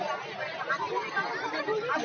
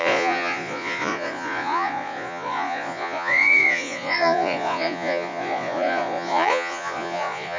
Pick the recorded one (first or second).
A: first